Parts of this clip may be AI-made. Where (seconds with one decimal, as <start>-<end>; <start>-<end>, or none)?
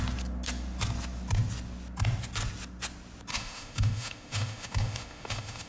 3.3-5.7